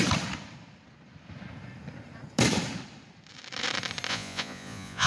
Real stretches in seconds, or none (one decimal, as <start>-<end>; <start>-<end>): 0.0-4.1